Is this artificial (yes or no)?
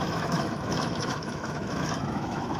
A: yes